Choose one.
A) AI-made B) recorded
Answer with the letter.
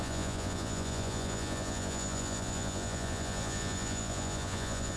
A